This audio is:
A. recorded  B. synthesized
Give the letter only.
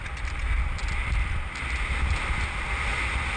A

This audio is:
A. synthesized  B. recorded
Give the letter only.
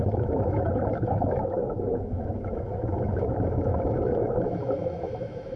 A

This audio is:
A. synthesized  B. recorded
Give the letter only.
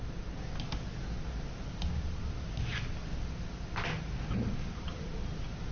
B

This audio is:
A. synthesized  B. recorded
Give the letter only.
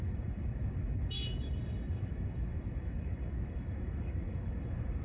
A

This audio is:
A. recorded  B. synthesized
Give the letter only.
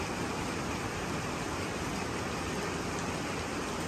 A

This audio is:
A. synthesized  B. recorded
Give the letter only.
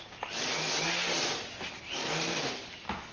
B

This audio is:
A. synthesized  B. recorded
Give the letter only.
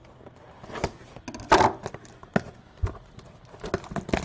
B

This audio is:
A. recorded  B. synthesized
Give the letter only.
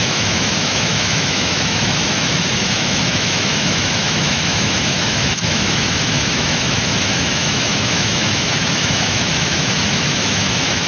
B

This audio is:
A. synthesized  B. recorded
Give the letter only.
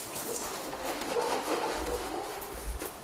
A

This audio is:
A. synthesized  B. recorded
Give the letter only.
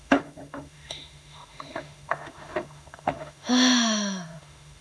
A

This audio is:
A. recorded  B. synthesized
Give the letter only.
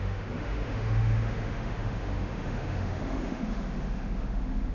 B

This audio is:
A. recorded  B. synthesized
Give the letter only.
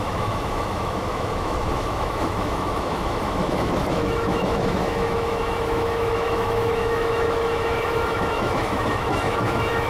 B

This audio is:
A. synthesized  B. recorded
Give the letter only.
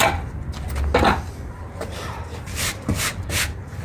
B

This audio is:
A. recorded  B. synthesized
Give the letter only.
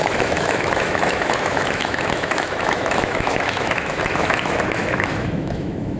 B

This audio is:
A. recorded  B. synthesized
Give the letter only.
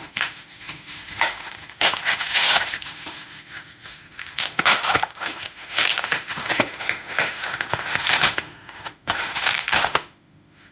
B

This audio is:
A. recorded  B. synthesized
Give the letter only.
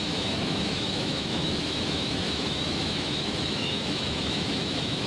B